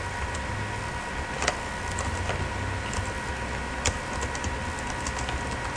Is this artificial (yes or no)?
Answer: no